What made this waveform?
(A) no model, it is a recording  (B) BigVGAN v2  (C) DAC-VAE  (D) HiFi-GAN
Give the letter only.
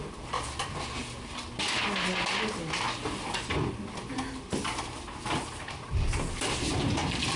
A